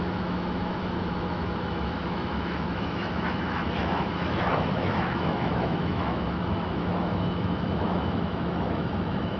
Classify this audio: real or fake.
fake